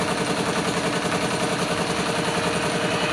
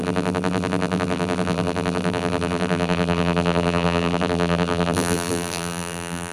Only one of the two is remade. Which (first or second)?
second